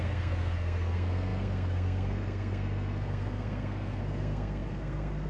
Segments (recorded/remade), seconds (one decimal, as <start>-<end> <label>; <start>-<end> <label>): 0.0-5.3 remade